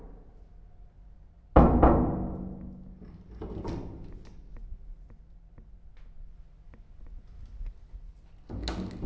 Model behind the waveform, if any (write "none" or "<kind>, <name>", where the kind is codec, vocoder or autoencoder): none